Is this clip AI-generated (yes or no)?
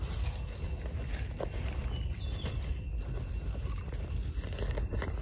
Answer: no